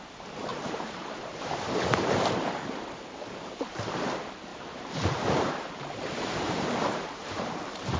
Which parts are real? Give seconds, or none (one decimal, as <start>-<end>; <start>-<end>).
0.0-0.5; 2.9-4.5